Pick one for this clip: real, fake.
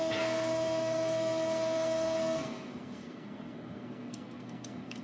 fake